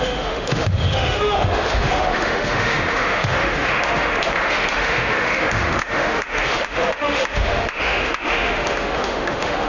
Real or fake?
fake